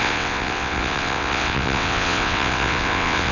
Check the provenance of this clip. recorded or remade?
remade